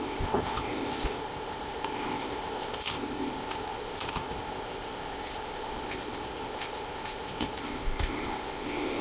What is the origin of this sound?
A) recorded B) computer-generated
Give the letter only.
B